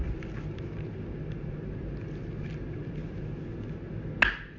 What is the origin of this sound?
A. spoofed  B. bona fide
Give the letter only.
B